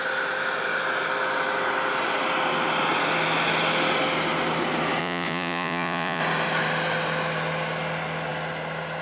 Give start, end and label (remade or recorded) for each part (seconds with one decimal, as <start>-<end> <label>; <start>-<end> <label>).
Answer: 0.0-5.0 recorded; 5.0-6.2 remade; 6.2-9.0 recorded